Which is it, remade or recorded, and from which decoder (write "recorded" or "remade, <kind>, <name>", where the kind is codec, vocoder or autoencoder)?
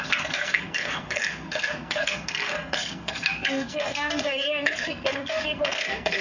remade, codec, SNAC